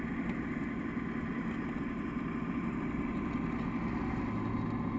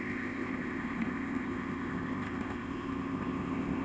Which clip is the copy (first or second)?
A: second